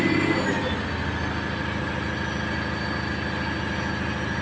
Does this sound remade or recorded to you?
recorded